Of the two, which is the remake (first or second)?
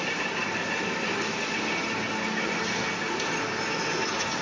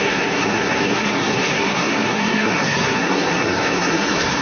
second